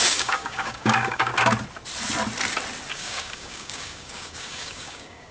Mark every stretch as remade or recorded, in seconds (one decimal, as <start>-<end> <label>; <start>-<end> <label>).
0.0-1.3 remade; 1.3-2.9 recorded; 2.9-5.3 remade